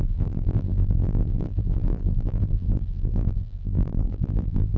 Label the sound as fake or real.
fake